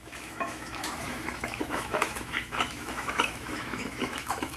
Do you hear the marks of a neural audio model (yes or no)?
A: yes